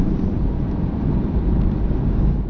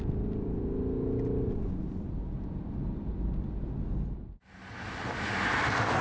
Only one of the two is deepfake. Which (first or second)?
first